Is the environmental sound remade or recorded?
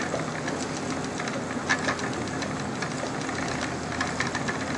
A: recorded